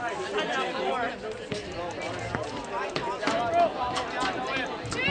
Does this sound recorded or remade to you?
recorded